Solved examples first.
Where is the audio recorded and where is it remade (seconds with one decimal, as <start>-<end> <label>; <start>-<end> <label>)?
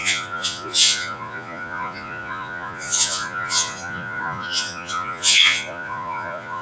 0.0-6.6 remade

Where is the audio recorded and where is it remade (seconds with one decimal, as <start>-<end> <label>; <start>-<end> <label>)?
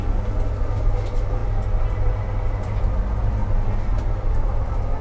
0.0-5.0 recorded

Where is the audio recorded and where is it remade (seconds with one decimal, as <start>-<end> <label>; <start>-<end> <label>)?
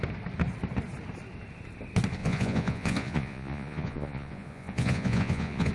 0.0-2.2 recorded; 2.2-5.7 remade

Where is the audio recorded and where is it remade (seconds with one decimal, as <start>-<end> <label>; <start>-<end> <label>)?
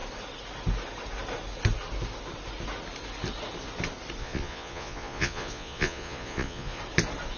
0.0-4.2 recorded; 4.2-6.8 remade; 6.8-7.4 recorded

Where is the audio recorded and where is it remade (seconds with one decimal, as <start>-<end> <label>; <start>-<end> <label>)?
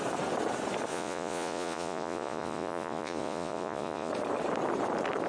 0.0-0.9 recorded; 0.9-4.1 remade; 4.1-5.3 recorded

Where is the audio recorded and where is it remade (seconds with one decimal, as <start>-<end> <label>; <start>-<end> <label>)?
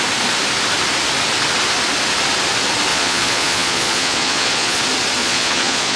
0.0-2.9 recorded; 2.9-4.8 remade; 4.8-5.2 recorded; 5.2-6.0 remade